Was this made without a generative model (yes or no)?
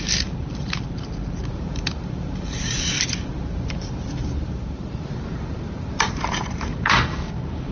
no